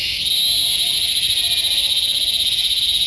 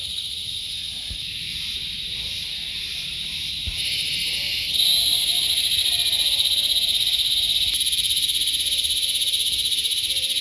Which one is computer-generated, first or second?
second